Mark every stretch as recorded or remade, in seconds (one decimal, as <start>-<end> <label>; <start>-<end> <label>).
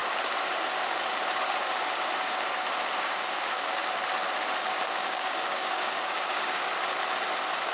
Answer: 0.0-3.0 recorded; 3.0-3.8 remade; 3.8-4.6 recorded; 4.6-6.6 remade; 6.6-7.7 recorded